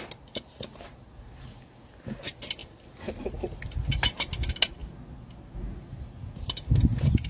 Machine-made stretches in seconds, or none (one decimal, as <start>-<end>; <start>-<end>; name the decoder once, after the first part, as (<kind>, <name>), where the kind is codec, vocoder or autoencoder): none